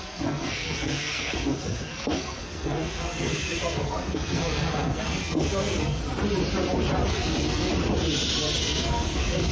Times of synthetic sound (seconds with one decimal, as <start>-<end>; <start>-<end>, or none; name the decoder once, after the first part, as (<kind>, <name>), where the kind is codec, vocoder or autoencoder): 0.0-6.0 (codec, SNAC); 7.1-7.7; 8.6-9.5